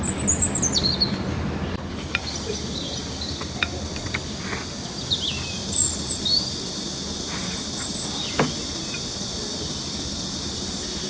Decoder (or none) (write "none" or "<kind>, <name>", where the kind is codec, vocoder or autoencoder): none